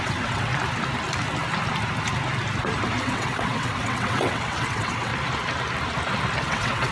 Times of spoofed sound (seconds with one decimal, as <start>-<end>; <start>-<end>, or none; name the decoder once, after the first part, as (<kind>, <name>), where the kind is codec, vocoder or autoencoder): 0.0-0.5 (vocoder, WaveNeXt); 3.0-5.1; 6.4-6.9